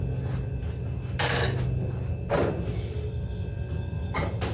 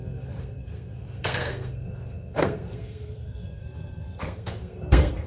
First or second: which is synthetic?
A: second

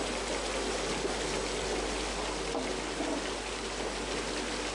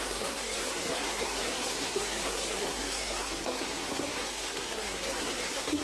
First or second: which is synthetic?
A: second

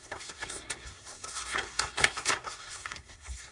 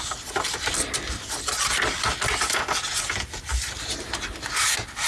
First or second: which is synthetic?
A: first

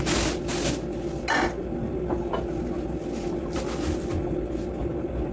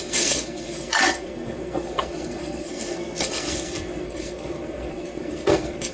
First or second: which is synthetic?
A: second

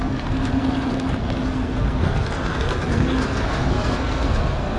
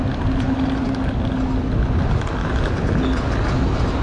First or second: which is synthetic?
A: first